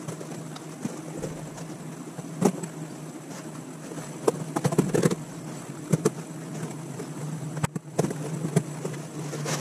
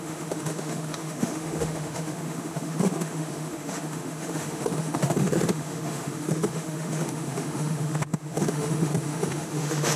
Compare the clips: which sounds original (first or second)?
first